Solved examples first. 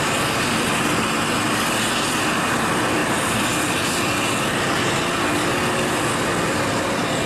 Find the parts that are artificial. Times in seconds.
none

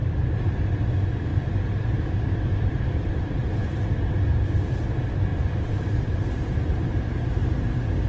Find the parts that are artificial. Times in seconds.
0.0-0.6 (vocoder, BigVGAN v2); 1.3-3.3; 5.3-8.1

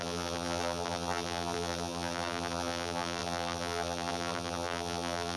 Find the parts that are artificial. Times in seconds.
0.0-5.4 (vocoder, BigVGAN v2)